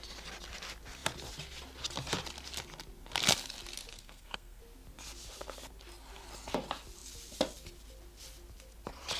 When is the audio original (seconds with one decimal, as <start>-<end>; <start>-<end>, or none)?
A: 0.0-3.9; 4.6-9.2